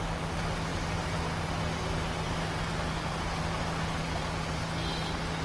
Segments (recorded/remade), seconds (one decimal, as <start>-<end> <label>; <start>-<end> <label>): 0.0-5.4 recorded